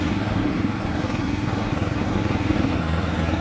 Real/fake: fake